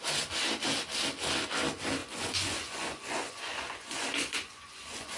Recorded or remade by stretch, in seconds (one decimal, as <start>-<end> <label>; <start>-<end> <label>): 0.0-2.0 recorded; 2.0-5.2 remade